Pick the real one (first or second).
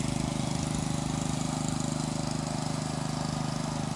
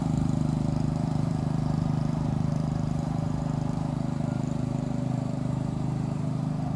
first